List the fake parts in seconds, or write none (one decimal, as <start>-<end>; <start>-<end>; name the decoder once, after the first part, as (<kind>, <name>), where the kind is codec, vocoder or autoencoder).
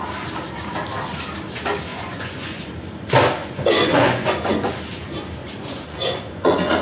1.9-2.7 (vocoder, Vocos); 3.4-4.7; 5.4-6.8